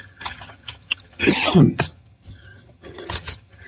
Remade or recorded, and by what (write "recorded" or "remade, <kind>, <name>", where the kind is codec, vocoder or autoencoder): remade, vocoder, HiFi-GAN